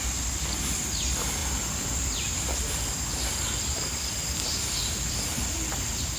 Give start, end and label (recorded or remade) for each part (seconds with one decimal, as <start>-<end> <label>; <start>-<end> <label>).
0.0-6.2 recorded